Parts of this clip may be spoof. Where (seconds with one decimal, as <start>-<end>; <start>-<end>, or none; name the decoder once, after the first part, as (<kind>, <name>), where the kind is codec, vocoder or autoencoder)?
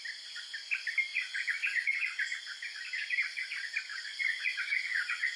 1.1-2.4 (vocoder, Vocos); 3.9-5.4